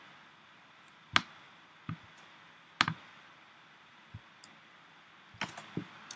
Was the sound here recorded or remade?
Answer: recorded